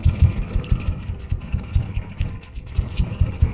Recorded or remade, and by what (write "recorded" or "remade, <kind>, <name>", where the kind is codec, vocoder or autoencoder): remade, codec, SNAC